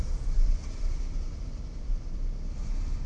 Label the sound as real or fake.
fake